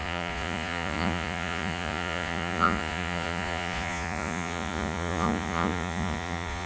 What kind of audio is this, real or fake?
fake